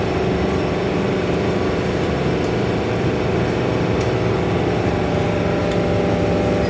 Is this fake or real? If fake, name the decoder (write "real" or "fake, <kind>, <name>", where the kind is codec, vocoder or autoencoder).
real